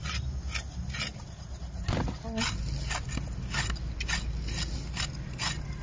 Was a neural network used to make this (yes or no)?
no